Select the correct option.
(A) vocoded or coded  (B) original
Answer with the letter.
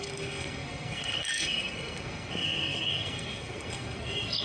A